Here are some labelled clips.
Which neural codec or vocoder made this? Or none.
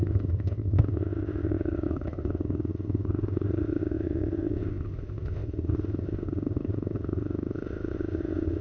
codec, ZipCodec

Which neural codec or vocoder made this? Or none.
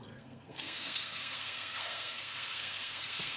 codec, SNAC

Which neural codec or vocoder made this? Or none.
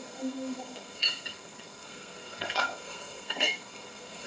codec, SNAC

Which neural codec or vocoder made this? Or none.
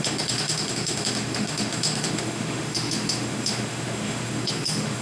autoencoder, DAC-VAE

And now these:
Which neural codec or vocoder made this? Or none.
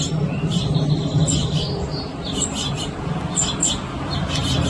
none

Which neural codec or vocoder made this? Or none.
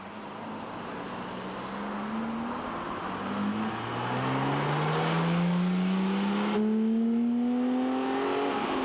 none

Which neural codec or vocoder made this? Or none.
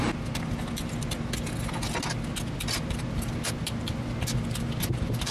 none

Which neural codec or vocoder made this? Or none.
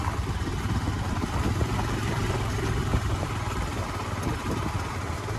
vocoder, BigVGAN v2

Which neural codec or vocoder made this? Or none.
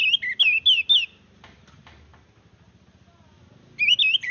none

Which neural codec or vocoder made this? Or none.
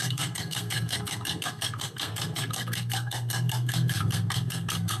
codec, SNAC